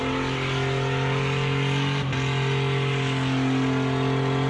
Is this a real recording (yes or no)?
yes